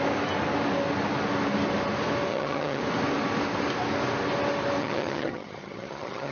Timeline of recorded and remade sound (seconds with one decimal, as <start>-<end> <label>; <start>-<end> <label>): 0.0-2.3 recorded; 2.3-2.8 remade; 2.8-4.8 recorded; 4.8-6.3 remade